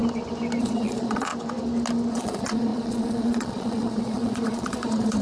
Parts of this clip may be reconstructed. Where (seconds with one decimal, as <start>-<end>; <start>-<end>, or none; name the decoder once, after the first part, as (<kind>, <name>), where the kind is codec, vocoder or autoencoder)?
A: 0.6-1.3 (vocoder, Vocos); 2.1-5.2